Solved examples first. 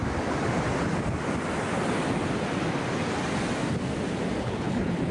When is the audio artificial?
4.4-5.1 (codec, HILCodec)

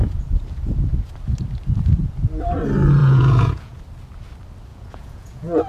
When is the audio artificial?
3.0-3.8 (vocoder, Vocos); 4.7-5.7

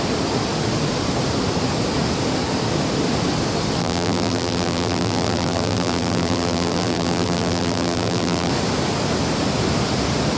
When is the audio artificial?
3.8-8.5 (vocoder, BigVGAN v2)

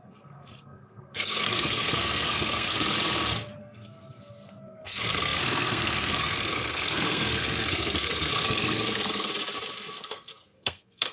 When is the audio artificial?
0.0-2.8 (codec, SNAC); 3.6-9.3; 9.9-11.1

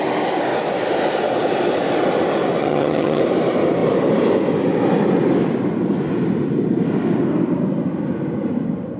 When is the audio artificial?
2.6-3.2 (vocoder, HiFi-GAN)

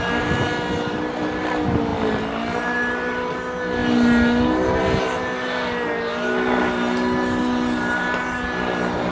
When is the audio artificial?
none

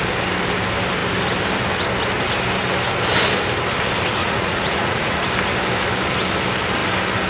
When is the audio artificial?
4.2-5.2 (vocoder, Vocos)

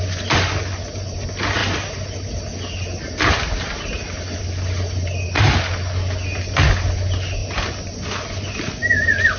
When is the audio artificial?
none